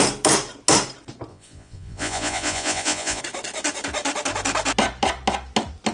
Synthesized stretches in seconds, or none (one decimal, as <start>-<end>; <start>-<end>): 1.3-3.2